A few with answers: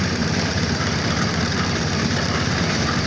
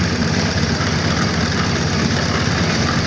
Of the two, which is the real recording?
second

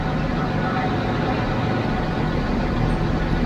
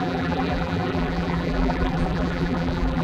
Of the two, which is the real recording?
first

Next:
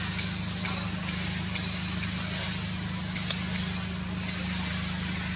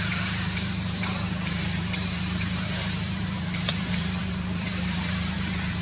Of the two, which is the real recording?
first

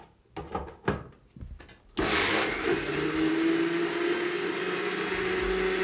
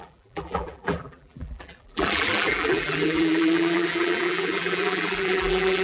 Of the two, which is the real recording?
first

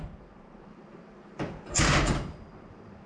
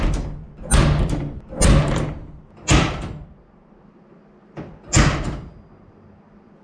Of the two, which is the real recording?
second